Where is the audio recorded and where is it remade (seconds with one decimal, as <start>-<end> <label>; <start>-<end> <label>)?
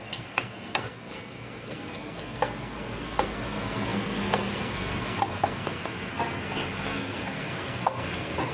0.0-8.5 remade